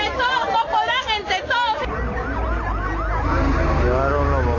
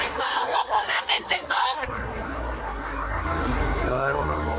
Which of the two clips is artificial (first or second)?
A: second